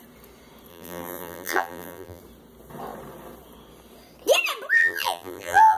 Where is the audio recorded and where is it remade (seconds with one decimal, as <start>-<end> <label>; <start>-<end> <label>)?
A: 0.0-0.7 recorded; 0.7-2.2 remade; 2.2-4.8 recorded; 4.8-5.8 remade